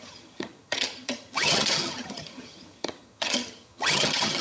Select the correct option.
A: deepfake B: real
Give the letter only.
A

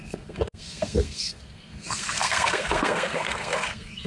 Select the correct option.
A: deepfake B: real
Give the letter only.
A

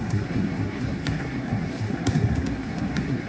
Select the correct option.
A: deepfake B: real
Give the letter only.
A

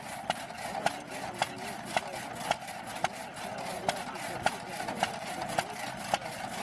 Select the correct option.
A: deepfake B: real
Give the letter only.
B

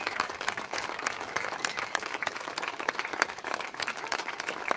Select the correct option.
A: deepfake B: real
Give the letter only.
A